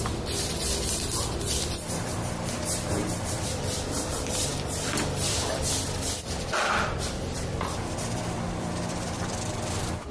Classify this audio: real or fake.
fake